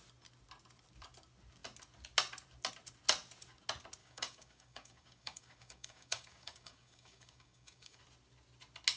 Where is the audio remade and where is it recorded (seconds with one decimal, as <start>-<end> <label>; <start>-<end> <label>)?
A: 0.0-4.0 recorded; 4.0-8.0 remade; 8.0-9.0 recorded

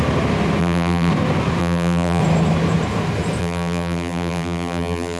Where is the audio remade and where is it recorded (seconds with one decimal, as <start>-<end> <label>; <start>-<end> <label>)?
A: 0.0-0.6 recorded; 0.6-1.1 remade; 1.1-1.6 recorded; 1.6-2.2 remade; 2.2-3.4 recorded; 3.4-5.2 remade

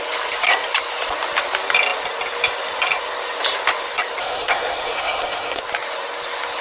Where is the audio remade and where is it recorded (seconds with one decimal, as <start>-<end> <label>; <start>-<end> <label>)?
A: 0.0-4.2 recorded; 4.2-5.6 remade; 5.6-6.6 recorded

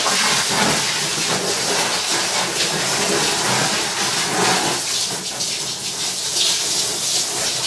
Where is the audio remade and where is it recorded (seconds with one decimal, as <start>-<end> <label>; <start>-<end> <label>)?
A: 0.0-1.1 recorded; 1.1-1.6 remade; 1.6-7.7 recorded

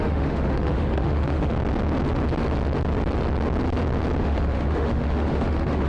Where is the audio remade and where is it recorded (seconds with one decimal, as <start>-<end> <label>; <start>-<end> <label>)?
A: 0.0-1.5 remade; 1.5-4.2 recorded; 4.2-5.9 remade

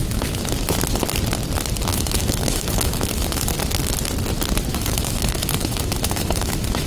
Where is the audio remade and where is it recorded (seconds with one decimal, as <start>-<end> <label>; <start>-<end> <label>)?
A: 0.0-0.5 remade; 0.5-1.9 recorded; 1.9-3.5 remade; 3.5-4.7 recorded; 4.7-6.9 remade

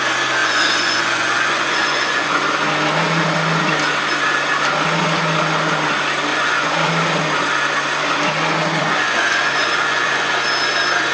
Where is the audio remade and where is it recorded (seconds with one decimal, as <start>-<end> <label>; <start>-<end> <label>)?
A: 0.0-0.4 recorded; 0.4-2.4 remade; 2.4-6.3 recorded; 6.3-6.9 remade; 6.9-8.8 recorded; 8.8-10.3 remade; 10.3-11.1 recorded

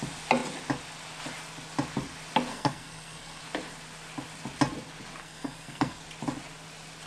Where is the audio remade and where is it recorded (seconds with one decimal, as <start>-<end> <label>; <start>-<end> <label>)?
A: 0.0-2.5 recorded; 2.5-3.4 remade; 3.4-5.2 recorded; 5.2-6.0 remade; 6.0-7.1 recorded